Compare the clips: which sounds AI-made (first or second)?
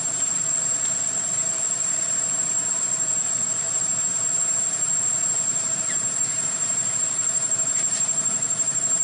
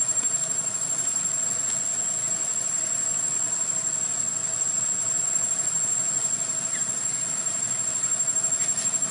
first